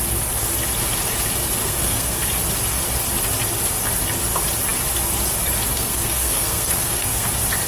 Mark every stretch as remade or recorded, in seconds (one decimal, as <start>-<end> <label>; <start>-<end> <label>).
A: 0.0-1.6 recorded; 1.6-2.2 remade; 2.2-5.7 recorded; 5.7-7.3 remade; 7.3-7.7 recorded